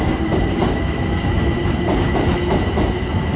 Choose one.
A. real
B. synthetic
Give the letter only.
A